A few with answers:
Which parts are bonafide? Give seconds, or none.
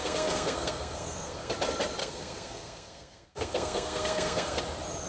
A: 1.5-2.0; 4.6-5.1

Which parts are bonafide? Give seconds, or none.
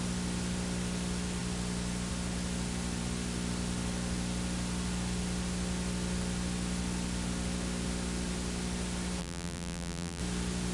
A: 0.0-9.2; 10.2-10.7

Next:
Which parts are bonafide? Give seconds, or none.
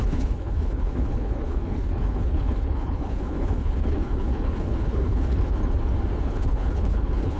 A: 5.6-6.2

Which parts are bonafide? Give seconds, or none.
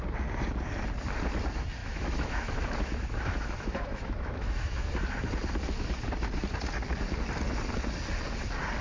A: 0.0-1.8; 4.9-8.8